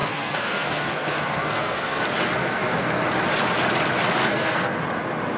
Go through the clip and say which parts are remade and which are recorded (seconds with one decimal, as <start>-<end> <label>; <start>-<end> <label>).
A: 0.0-2.0 remade; 2.0-2.4 recorded; 2.4-3.0 remade; 3.0-4.2 recorded; 4.2-4.8 remade; 4.8-5.4 recorded